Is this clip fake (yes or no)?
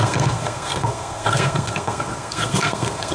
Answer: yes